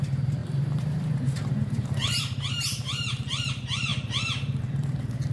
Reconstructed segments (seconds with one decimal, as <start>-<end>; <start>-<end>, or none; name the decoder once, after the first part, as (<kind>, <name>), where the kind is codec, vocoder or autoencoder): 0.0-3.9 (vocoder, BigVGAN v2); 4.6-5.3